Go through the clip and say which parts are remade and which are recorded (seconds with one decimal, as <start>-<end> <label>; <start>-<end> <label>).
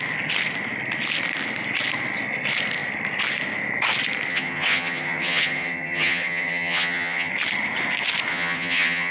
0.0-4.3 recorded; 4.3-7.3 remade; 7.3-8.3 recorded; 8.3-9.1 remade